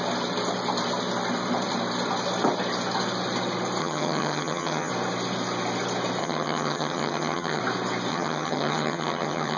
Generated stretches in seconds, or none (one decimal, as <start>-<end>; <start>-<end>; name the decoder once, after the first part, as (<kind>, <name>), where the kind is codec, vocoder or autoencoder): 3.8-4.9 (vocoder, HiFi-GAN); 6.2-7.6; 8.1-9.6